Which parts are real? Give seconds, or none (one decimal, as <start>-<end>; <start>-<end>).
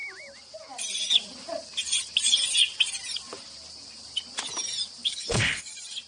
0.0-5.0; 5.6-6.1